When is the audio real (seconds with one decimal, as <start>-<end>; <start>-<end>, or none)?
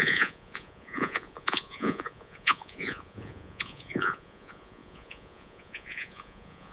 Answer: none